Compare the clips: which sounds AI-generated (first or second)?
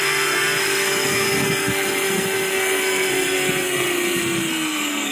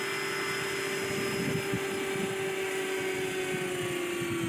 first